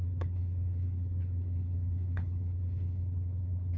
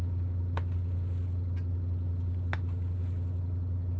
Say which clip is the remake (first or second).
first